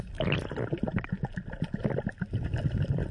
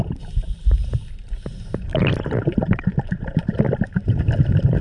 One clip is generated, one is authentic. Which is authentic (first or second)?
first